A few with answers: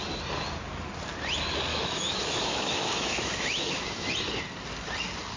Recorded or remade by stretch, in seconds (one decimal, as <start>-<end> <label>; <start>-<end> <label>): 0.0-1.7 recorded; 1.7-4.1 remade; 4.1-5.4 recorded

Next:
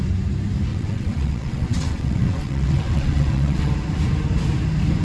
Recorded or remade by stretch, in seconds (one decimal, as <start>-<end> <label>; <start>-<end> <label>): 0.0-0.7 recorded; 0.7-3.7 remade; 3.7-5.0 recorded

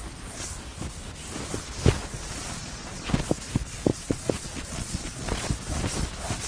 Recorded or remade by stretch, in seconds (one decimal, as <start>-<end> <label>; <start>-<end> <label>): 0.0-2.0 recorded; 2.0-3.1 remade; 3.1-3.9 recorded; 3.9-5.5 remade; 5.5-6.5 recorded

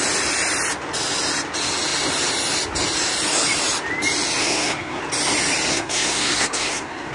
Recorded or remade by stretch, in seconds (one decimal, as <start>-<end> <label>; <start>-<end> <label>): 0.0-4.4 recorded; 4.4-5.0 remade; 5.0-5.7 recorded; 5.7-7.1 remade